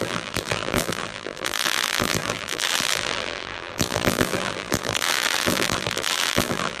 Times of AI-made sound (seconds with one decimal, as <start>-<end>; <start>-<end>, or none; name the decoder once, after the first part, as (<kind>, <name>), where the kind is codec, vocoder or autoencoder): 0.0-6.8 (vocoder, BigVGAN v2)